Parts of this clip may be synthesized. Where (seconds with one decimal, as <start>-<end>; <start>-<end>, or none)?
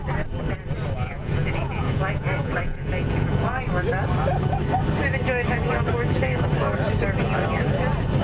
1.0-3.6